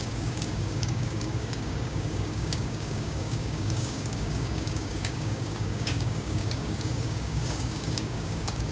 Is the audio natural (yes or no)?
no